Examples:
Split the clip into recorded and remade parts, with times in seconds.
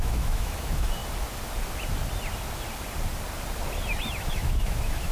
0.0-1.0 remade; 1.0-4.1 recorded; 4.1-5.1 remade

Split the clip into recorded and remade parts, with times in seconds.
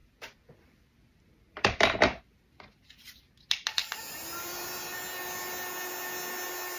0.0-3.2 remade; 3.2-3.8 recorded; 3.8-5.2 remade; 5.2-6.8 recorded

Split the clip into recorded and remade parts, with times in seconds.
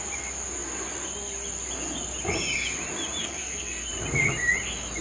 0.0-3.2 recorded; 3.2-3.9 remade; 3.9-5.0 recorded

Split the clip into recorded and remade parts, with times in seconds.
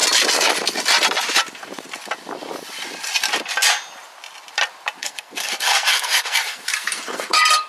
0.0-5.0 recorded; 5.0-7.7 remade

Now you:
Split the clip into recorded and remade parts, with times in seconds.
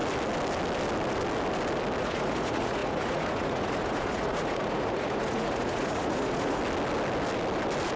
0.0-2.0 recorded; 2.0-6.6 remade; 6.6-8.0 recorded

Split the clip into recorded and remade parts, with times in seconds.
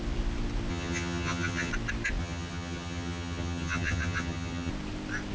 0.0-0.7 recorded; 0.7-1.7 remade; 1.7-2.2 recorded; 2.2-4.7 remade; 4.7-5.3 recorded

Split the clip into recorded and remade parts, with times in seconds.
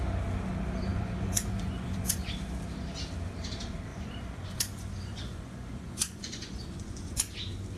0.0-0.9 recorded; 0.9-2.3 remade; 2.3-3.9 recorded; 3.9-7.3 remade; 7.3-7.8 recorded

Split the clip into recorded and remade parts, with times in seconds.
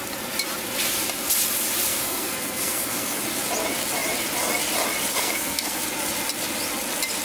0.0-1.9 recorded; 1.9-3.2 remade; 3.2-5.1 recorded; 5.1-5.8 remade; 5.8-7.2 recorded